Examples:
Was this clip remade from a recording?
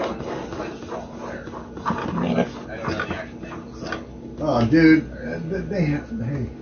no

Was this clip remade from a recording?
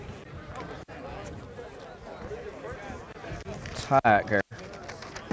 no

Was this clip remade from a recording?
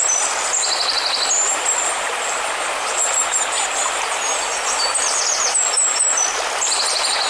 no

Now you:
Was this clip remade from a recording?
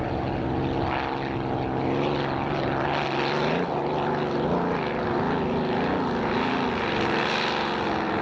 no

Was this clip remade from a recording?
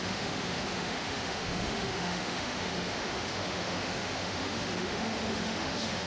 yes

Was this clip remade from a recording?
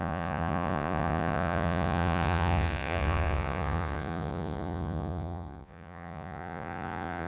yes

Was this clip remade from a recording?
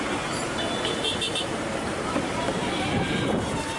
yes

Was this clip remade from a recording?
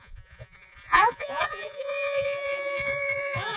yes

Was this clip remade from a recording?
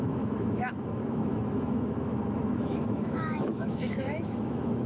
yes